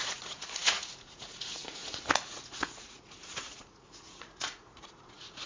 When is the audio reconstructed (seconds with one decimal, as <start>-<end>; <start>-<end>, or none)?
0.0-5.5

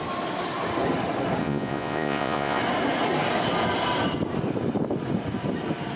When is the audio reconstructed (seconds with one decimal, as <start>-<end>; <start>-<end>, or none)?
1.4-2.6